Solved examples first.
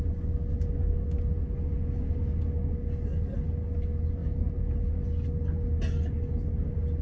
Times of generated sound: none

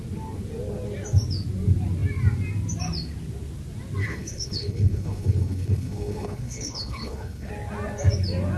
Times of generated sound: 4.0-7.5 (codec, HILCodec)

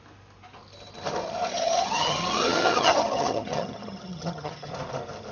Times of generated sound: 1.5-4.7 (vocoder, HiFi-GAN)

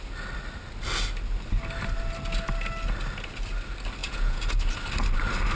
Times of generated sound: 4.0-4.5 (vocoder, Vocos)

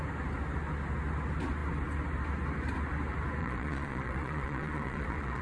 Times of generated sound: 3.4-5.4 (vocoder, Vocos)

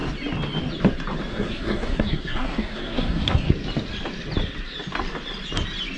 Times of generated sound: 1.3-3.5 (codec, SNAC)

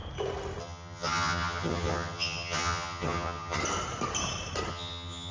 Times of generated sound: 0.6-3.6 (vocoder, HiFi-GAN); 4.7-5.3